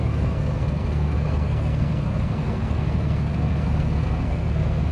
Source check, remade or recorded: remade